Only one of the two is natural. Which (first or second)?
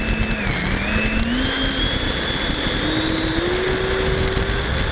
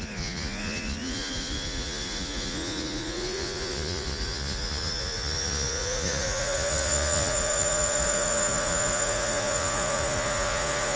first